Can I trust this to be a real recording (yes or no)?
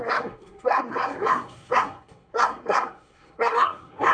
no